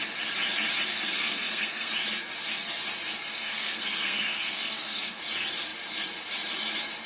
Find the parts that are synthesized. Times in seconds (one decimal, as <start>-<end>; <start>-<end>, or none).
0.9-1.9; 3.3-5.2